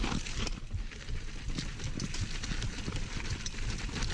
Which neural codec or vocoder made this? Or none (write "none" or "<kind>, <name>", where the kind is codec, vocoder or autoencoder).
none